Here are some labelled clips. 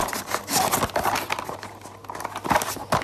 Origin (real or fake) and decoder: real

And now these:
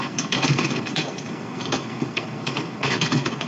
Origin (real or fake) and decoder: fake, codec, SNAC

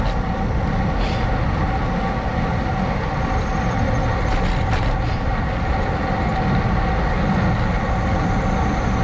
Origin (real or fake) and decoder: real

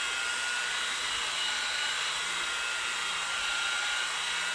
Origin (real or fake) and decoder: real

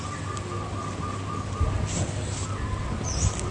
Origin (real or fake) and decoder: real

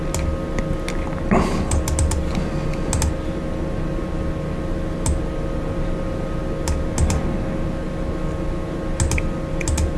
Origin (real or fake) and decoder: real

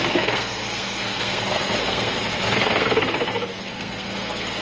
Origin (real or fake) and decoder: fake, codec, SNAC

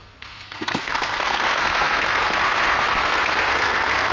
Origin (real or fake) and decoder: fake, codec, SNAC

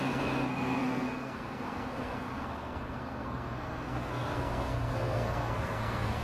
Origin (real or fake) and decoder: fake, codec, SNAC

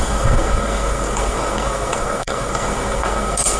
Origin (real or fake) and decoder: fake, codec, SNAC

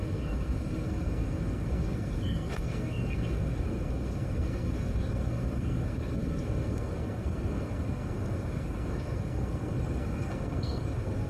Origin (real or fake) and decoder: fake, codec, SNAC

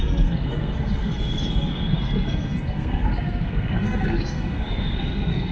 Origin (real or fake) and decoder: fake, codec, SNAC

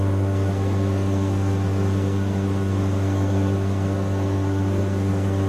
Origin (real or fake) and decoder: fake, codec, SNAC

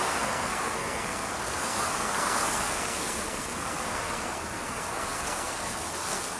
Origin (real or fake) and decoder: fake, codec, SNAC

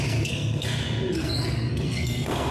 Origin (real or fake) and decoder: fake, codec, SNAC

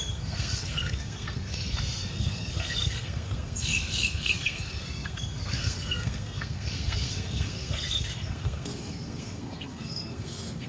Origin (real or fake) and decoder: fake, codec, SNAC